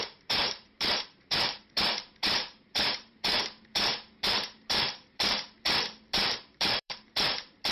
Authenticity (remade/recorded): remade